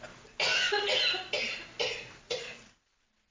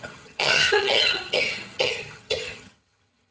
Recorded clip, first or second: first